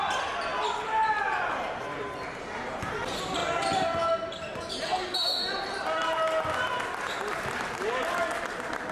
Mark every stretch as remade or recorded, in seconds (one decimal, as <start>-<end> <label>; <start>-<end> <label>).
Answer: 0.0-8.9 recorded